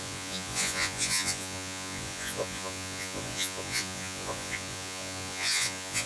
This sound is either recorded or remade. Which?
remade